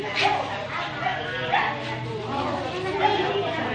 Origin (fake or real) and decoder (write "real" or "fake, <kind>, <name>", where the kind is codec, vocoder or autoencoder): real